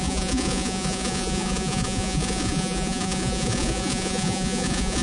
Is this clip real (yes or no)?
no